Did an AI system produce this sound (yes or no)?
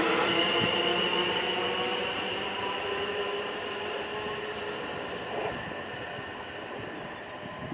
no